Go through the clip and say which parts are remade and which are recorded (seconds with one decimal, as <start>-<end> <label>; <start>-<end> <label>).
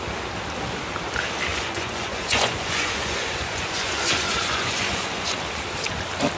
0.0-1.5 recorded; 1.5-5.3 remade; 5.3-6.4 recorded